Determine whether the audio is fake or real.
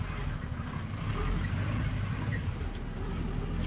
real